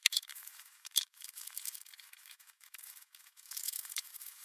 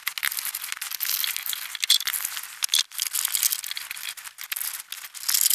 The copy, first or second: first